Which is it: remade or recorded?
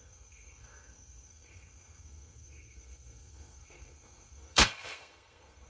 remade